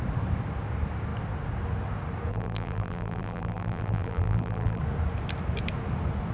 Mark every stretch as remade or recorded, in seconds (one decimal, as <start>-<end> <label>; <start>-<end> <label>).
0.0-2.3 recorded; 2.3-4.8 remade; 4.8-6.3 recorded